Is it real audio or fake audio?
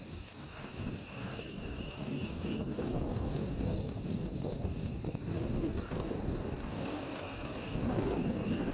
fake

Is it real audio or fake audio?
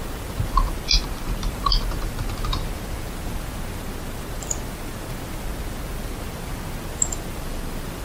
real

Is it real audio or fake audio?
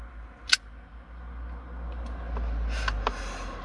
real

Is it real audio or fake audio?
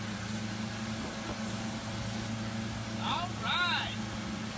real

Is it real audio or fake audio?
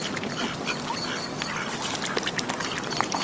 real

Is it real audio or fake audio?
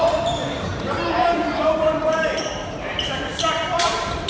fake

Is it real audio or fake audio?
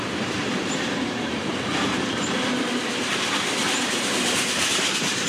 fake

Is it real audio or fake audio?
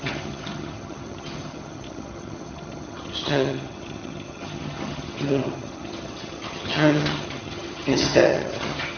fake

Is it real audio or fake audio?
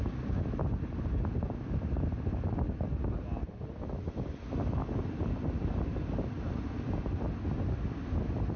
real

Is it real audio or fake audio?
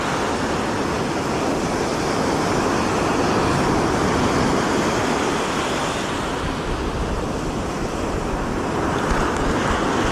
real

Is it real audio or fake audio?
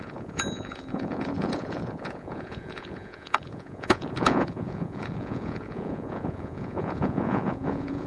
fake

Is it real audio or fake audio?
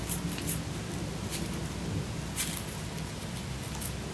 real